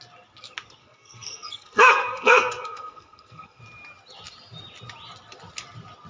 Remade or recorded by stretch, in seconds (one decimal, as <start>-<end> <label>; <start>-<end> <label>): 0.0-0.8 recorded; 0.8-3.6 remade; 3.6-6.1 recorded